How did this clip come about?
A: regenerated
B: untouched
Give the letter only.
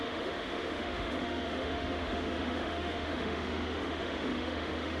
A